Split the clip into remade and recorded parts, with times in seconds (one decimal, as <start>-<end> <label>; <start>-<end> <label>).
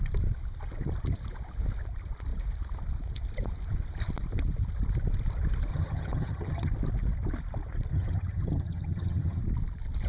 0.0-5.7 recorded; 5.7-6.7 remade; 6.7-7.9 recorded; 7.9-9.4 remade; 9.4-10.1 recorded